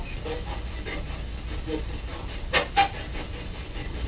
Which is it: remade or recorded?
recorded